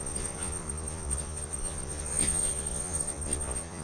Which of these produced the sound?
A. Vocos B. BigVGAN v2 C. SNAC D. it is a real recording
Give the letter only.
A